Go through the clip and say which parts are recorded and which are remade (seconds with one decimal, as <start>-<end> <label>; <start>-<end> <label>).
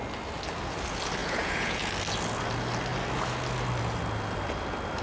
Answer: 0.0-1.2 recorded; 1.2-1.8 remade; 1.8-5.0 recorded